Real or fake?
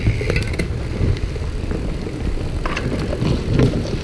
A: real